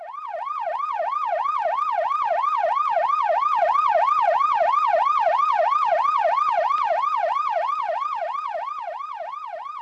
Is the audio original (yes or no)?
yes